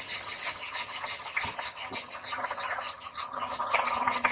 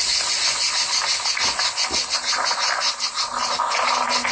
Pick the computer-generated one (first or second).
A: first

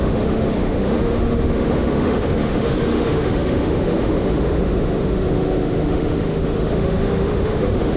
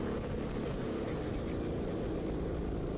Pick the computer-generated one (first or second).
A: first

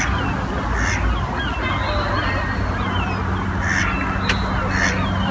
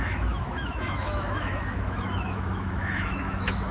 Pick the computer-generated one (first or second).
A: second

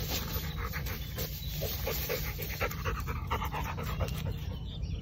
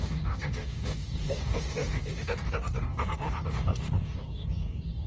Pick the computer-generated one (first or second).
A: second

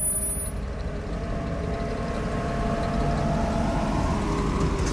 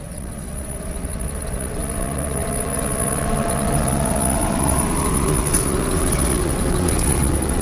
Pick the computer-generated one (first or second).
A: second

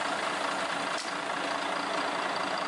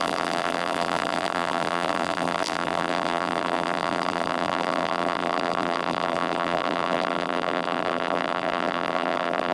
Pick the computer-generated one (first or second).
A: second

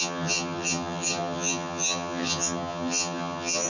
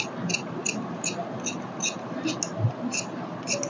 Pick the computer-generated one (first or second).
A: first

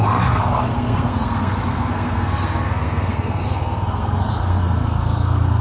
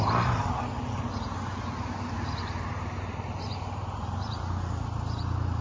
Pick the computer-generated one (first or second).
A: first